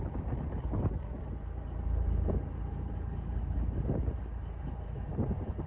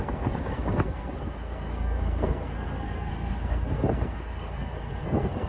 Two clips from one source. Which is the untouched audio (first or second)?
first